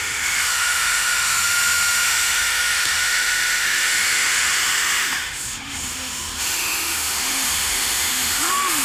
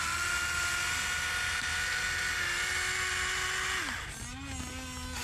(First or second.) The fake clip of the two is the first